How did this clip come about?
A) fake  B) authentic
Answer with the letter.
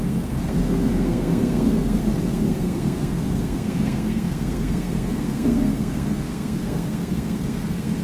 A